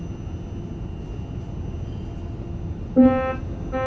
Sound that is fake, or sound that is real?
real